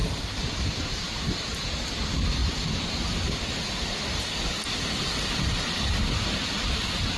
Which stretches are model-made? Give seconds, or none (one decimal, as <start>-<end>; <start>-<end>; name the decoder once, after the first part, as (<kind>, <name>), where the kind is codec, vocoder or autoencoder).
2.4-2.9 (vocoder, BigVGAN v2)